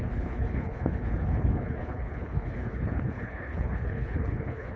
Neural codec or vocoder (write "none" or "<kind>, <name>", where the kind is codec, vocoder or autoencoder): codec, HILCodec